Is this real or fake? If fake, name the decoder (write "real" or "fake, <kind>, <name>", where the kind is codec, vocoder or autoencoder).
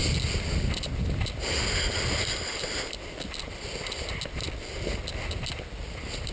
real